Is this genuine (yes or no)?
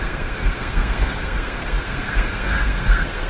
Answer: no